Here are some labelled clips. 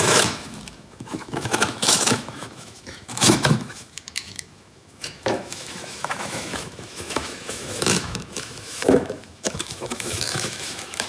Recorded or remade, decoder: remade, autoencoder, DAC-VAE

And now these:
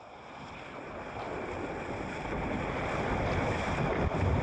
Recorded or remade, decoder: recorded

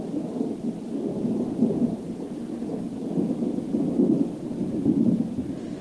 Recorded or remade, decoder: recorded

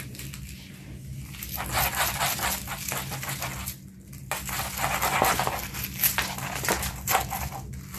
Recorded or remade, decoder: recorded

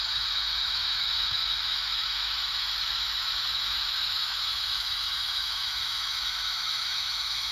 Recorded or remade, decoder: remade, autoencoder, DAC-VAE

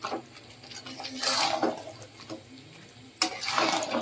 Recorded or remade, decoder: recorded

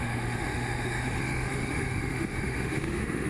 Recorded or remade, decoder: remade, autoencoder, DAC-VAE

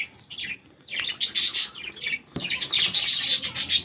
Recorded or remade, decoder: recorded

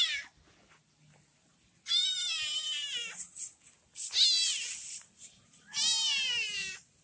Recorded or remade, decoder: recorded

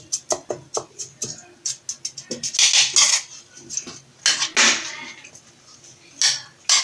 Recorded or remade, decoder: recorded